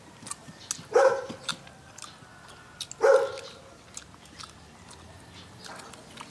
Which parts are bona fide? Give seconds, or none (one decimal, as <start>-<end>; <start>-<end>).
0.0-6.3